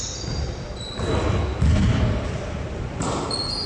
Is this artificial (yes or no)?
no